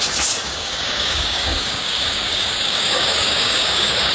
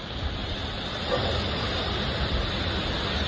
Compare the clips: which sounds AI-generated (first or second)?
first